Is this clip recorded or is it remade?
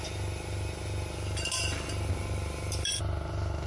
recorded